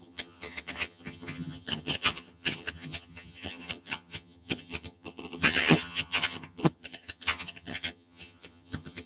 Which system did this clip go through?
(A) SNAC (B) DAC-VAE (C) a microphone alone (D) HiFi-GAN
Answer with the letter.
D